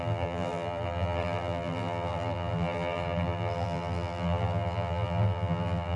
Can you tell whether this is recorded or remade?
remade